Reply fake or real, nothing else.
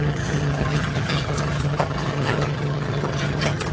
fake